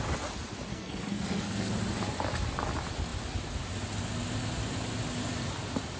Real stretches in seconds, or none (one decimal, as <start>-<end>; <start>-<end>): 0.0-0.7; 1.7-6.0